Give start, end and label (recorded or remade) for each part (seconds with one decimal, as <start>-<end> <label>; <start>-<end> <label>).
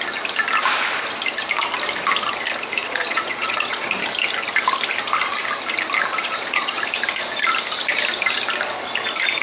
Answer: 0.0-2.8 recorded; 2.8-3.9 remade; 3.9-6.1 recorded; 6.1-6.8 remade; 6.8-9.4 recorded